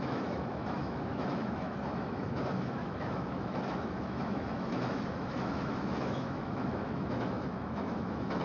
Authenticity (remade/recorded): remade